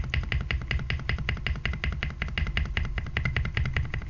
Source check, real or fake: real